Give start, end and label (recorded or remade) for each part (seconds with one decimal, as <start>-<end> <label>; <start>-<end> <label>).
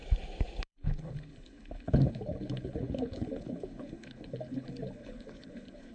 0.0-0.6 recorded; 0.6-5.9 remade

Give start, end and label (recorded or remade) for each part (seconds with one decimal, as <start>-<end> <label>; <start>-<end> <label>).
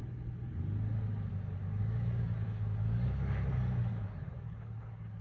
0.0-1.8 recorded; 1.8-5.2 remade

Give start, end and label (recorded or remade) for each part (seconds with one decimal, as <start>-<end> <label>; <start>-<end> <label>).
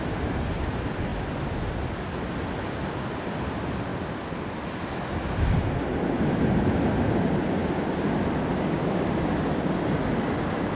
0.0-10.8 recorded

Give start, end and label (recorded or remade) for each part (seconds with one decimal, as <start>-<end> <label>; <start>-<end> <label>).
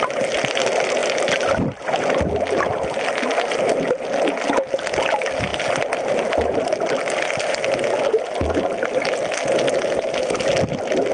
0.0-11.1 recorded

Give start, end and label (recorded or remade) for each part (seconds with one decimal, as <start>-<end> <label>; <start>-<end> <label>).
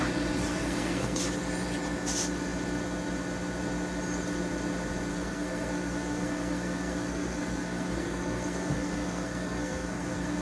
0.0-0.4 recorded; 0.4-1.2 remade; 1.2-5.1 recorded; 5.1-10.4 remade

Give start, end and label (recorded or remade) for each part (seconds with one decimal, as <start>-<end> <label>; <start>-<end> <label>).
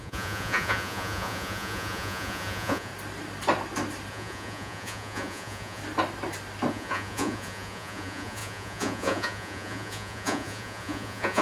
0.0-2.9 remade; 2.9-4.1 recorded; 4.1-5.8 remade; 5.8-6.7 recorded; 6.7-11.4 remade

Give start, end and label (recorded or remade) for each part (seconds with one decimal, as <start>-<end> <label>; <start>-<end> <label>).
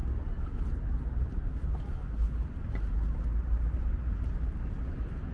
0.0-5.3 recorded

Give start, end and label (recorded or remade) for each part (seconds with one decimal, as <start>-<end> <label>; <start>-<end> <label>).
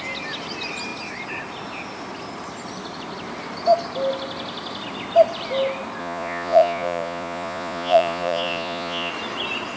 0.0-6.0 recorded; 6.0-9.1 remade; 9.1-9.8 recorded